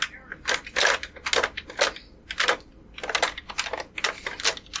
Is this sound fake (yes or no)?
no